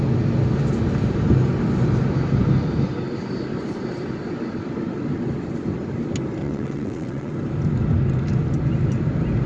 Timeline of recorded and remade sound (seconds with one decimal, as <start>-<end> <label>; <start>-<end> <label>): 0.0-6.4 recorded; 6.4-7.3 remade; 7.3-9.5 recorded

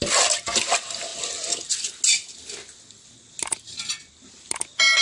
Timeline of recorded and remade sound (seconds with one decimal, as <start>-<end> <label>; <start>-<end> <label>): 0.0-5.0 recorded

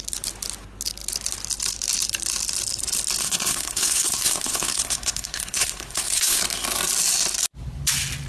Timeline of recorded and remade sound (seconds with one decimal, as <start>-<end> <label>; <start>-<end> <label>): 0.0-3.2 recorded; 3.2-6.4 remade; 6.4-8.3 recorded

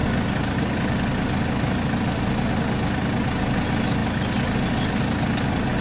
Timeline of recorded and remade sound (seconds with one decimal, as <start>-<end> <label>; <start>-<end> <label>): 0.0-5.8 recorded

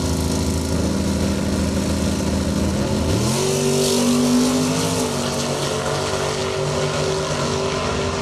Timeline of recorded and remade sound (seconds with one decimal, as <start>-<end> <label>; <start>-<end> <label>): 0.0-8.2 recorded